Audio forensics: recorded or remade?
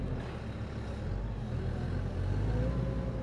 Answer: recorded